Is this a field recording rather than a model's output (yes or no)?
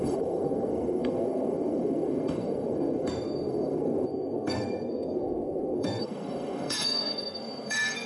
no